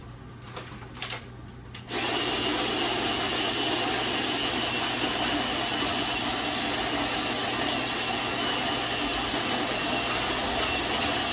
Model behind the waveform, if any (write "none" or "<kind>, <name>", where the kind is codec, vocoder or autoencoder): none